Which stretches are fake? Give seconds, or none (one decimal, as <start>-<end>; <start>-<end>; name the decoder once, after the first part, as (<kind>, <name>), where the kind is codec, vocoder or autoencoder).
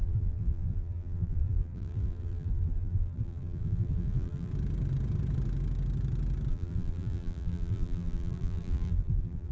0.0-4.5 (vocoder, BigVGAN v2); 6.5-9.5